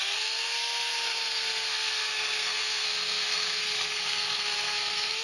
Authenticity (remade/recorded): remade